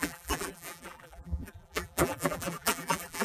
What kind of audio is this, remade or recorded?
remade